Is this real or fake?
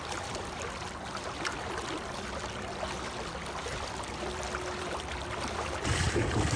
real